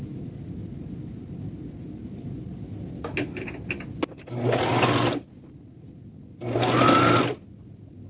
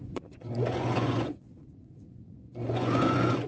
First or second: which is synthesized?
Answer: second